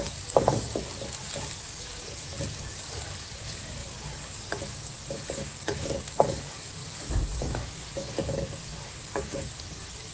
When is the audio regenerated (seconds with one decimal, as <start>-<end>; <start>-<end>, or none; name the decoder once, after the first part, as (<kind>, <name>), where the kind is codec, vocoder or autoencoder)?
0.0-0.7 (codec, DAC); 1.6-10.1